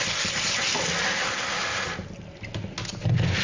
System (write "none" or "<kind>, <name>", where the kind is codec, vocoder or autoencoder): none